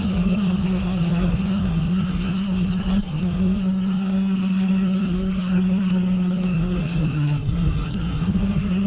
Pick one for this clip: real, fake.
fake